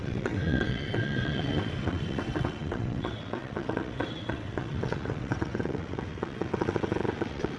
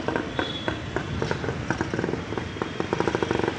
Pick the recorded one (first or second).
second